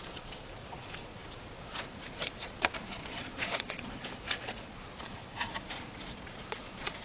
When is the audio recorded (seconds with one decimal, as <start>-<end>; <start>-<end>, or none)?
none